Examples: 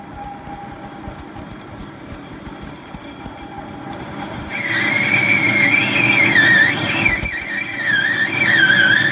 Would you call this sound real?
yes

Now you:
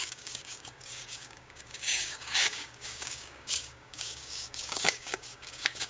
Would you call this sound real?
no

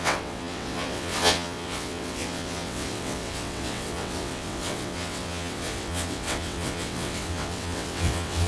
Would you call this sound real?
no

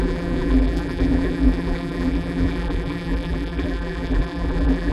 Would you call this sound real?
no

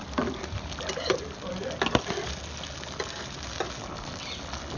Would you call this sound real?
yes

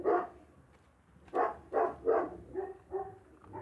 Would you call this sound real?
yes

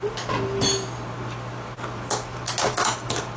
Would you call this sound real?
yes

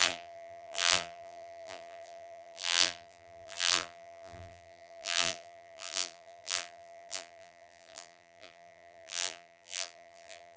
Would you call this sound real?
no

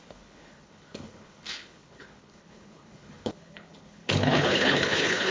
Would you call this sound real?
no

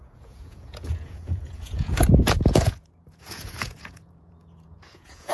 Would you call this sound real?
no